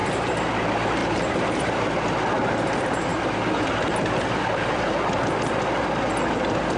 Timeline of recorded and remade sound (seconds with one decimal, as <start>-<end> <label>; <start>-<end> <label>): 0.0-0.5 remade; 0.5-1.0 recorded; 1.0-1.7 remade; 1.7-6.8 recorded